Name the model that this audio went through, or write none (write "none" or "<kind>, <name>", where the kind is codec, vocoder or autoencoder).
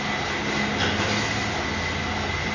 none